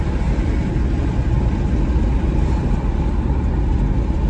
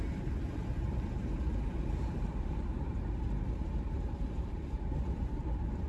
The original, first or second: first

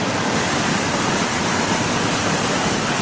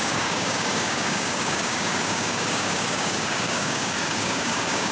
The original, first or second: first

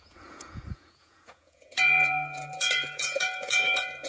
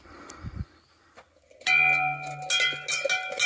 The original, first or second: second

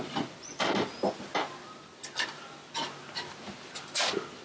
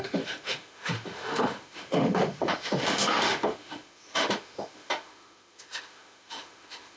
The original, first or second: first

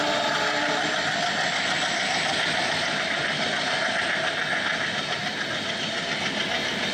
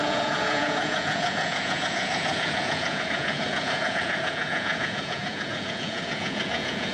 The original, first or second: first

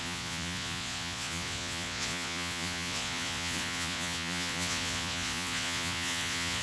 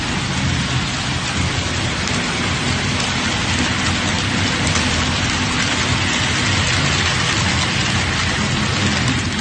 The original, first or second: second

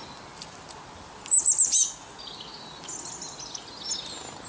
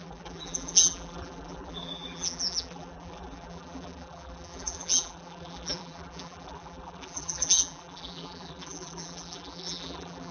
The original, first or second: first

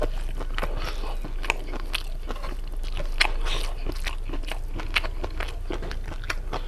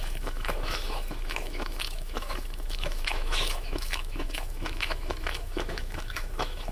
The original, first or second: first